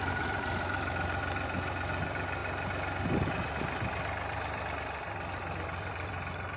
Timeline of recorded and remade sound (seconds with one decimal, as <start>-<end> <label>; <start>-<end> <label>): 0.0-2.4 remade; 2.4-3.2 recorded; 3.2-6.6 remade